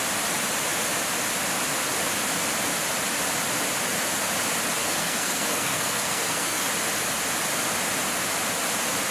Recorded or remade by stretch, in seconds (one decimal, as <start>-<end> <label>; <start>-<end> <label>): 0.0-4.8 recorded; 4.8-6.7 remade; 6.7-9.1 recorded